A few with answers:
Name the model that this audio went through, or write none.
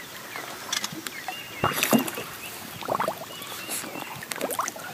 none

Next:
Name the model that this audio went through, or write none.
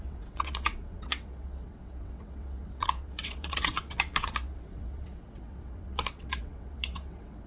vocoder, WaveNeXt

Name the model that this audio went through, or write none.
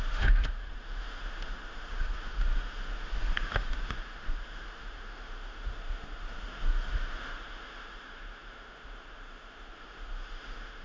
autoencoder, DAC-VAE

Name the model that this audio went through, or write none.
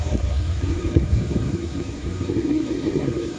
codec, SNAC